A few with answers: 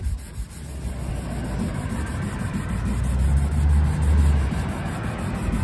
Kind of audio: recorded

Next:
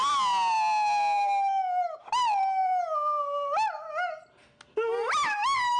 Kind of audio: recorded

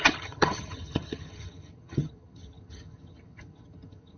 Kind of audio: remade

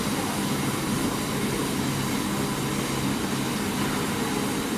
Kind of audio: recorded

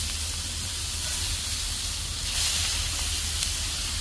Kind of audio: recorded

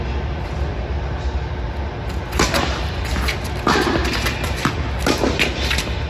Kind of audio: recorded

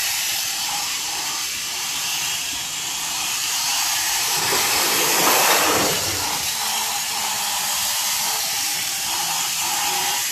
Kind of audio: remade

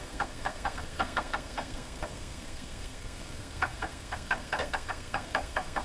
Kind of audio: remade